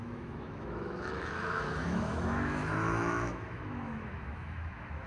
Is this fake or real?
fake